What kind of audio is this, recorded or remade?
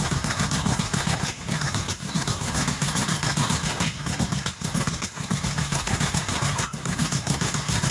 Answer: remade